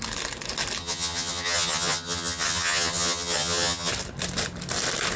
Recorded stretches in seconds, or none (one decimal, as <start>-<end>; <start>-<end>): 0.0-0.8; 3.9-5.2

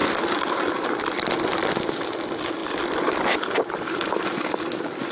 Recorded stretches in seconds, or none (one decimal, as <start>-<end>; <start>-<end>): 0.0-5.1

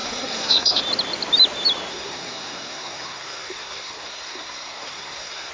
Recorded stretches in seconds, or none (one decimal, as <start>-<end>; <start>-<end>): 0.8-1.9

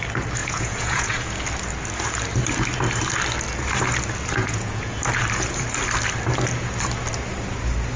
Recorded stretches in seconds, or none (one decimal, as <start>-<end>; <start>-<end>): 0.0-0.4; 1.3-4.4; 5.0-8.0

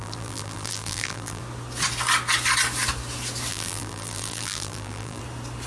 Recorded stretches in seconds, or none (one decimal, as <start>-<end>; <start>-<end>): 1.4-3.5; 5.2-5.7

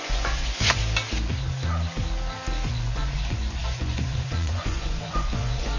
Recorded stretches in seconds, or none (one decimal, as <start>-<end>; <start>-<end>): 0.8-2.7

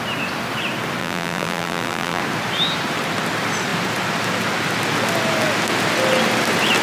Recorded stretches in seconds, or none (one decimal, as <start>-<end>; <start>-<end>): 0.0-1.0; 2.2-6.8